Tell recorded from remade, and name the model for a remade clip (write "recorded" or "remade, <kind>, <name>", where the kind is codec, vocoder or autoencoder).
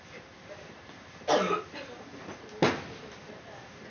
recorded